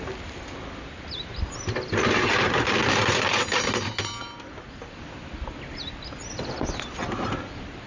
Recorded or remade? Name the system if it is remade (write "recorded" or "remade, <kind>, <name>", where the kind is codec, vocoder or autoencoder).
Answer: recorded